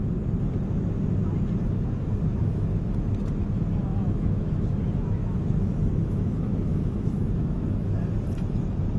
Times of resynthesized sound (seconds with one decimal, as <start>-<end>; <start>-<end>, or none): 2.3-2.9; 3.9-8.0

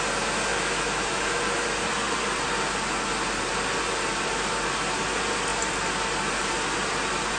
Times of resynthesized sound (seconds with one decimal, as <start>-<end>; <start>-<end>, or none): 0.5-1.4

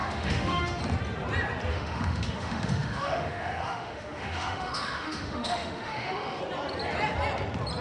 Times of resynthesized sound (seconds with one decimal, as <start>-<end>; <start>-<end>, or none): 0.0-0.8; 1.7-6.4

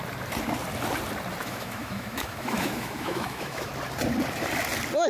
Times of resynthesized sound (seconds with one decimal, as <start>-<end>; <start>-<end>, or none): 1.4-3.7